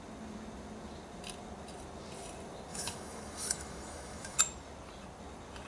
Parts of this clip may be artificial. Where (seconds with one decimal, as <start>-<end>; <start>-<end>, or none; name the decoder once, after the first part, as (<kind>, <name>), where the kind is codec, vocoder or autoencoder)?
2.7-4.4 (autoencoder, DAC-VAE)